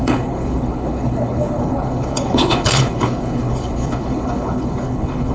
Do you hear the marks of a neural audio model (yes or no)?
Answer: yes